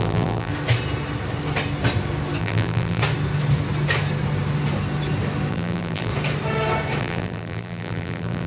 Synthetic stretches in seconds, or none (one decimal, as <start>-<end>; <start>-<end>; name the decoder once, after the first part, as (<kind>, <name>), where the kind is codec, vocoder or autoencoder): 0.0-0.5 (vocoder, BigVGAN v2); 2.4-3.0; 5.5-6.1; 7.0-8.5